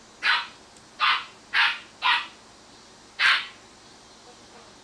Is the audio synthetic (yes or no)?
no